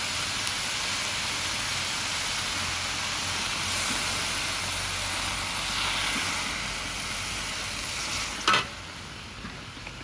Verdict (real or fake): real